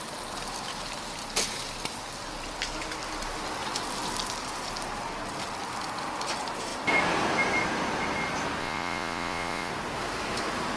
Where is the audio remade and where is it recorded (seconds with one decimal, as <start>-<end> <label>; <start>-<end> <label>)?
0.0-8.6 recorded; 8.6-9.7 remade; 9.7-10.8 recorded